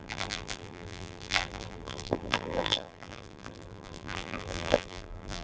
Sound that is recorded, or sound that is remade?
remade